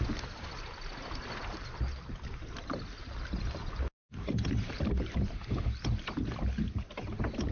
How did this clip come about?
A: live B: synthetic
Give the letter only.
A